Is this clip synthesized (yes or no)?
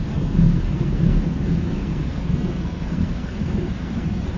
yes